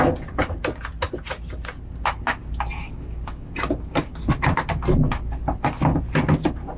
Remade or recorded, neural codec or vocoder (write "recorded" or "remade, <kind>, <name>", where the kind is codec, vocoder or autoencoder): recorded